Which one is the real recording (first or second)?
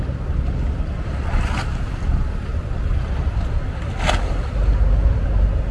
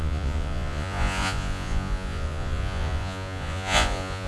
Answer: first